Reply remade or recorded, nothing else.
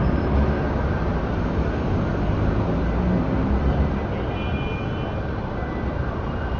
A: recorded